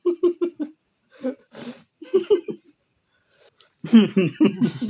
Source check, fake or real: fake